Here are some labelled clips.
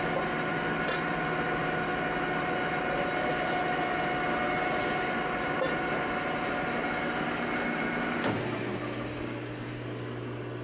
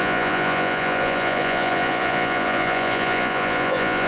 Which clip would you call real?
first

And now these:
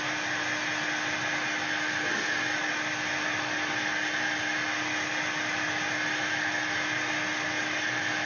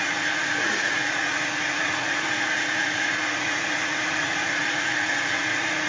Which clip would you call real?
first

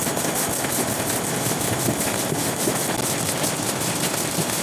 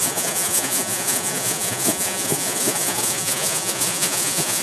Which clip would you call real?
first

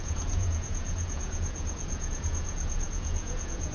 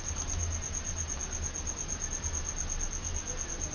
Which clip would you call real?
second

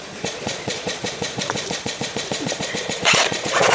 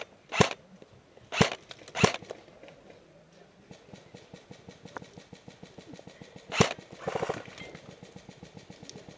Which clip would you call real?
second